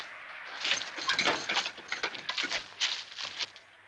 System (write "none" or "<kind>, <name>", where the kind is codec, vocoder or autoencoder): none